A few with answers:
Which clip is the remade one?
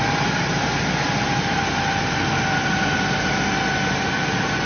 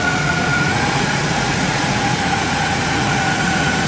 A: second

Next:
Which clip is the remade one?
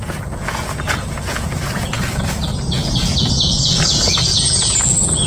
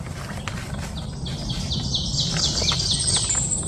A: first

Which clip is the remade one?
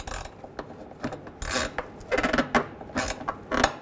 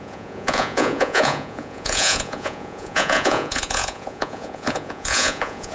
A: second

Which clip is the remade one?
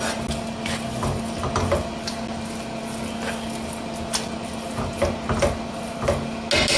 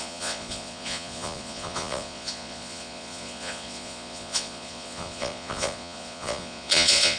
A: second